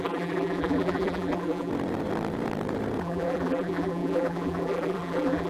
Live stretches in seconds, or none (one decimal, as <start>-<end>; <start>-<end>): 1.7-3.0